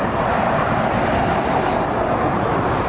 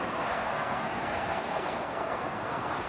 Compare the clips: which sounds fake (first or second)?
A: second